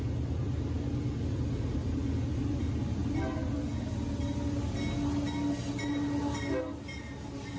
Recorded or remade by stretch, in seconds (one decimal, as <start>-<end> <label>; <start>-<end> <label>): 0.0-7.6 recorded

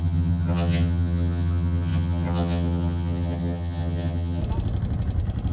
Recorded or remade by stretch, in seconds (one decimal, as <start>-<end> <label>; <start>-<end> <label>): 0.0-4.4 remade; 4.4-5.5 recorded

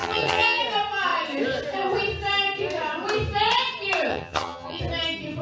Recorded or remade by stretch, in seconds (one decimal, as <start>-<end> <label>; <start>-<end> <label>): 0.0-0.6 remade; 0.6-4.1 recorded; 4.1-4.8 remade; 4.8-5.4 recorded

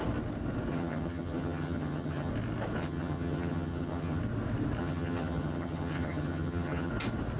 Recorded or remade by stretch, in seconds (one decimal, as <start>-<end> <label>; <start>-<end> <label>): 0.0-0.7 recorded; 0.7-2.3 remade; 2.3-2.8 recorded; 2.8-4.2 remade; 4.2-4.8 recorded; 4.8-6.9 remade; 6.9-7.4 recorded

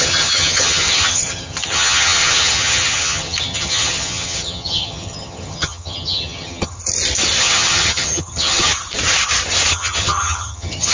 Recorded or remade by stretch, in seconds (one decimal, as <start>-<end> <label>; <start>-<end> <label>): 0.0-6.8 remade; 6.8-7.4 recorded; 7.4-8.7 remade; 8.7-9.7 recorded; 9.7-10.9 remade